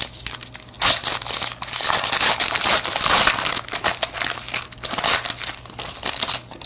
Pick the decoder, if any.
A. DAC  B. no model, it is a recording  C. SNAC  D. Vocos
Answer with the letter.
B